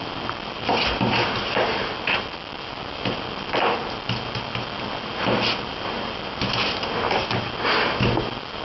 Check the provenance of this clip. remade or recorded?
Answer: recorded